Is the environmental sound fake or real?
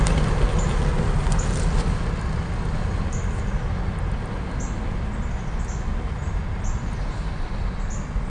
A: real